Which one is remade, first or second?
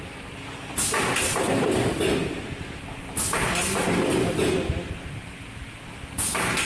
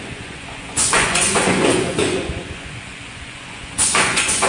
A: second